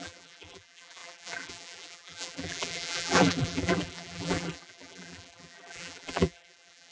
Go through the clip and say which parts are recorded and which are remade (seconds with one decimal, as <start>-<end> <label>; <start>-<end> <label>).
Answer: 0.0-6.9 remade